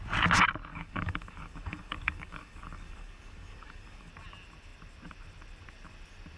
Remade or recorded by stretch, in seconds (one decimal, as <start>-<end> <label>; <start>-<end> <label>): 0.0-0.7 recorded; 0.7-4.1 remade; 4.1-6.4 recorded